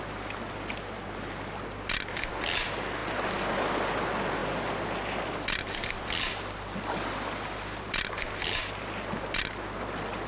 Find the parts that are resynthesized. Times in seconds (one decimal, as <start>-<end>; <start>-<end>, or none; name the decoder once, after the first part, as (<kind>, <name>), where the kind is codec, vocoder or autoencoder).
none